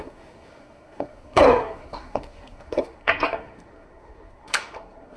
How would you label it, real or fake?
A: fake